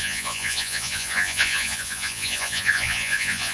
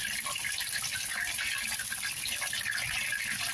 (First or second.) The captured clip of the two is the second